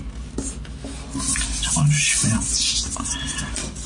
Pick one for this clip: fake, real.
real